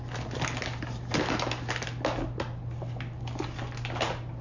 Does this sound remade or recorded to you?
recorded